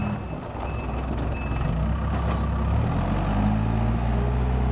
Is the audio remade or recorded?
recorded